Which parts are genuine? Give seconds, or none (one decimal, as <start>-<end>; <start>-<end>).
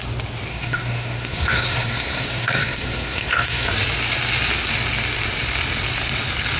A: 0.0-0.5; 3.7-6.6